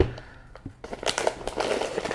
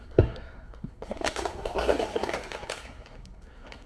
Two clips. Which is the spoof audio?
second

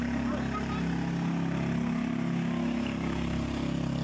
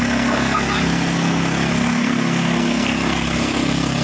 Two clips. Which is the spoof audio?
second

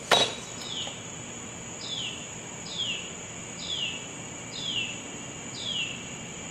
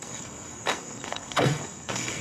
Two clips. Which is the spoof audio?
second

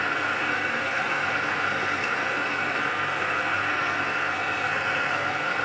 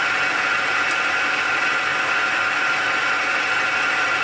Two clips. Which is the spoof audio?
first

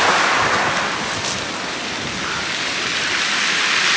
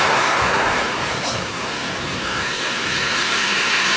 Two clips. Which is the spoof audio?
second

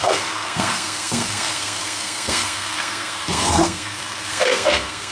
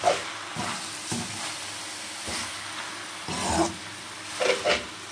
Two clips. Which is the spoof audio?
first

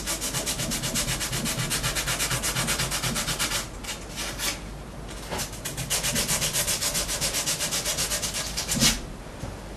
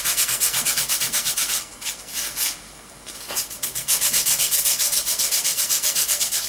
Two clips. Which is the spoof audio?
second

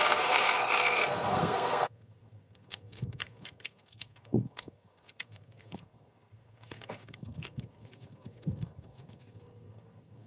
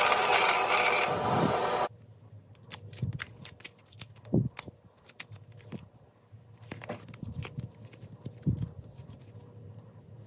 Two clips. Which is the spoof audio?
first